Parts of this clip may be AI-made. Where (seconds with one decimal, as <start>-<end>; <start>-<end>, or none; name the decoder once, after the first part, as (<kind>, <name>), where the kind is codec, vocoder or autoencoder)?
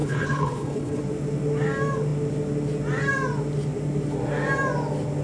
0.0-1.0 (codec, HILCodec)